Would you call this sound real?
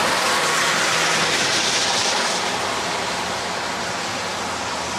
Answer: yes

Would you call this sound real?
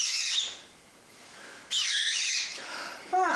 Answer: no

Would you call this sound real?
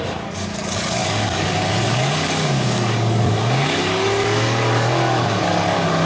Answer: no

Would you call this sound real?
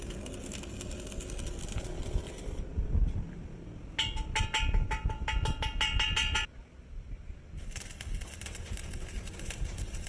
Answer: yes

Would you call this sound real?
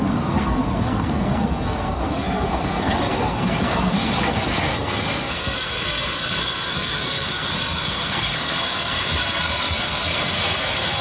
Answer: no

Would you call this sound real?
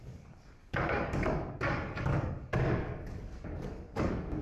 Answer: no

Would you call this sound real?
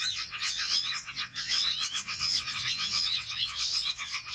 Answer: no